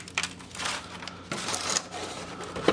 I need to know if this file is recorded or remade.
recorded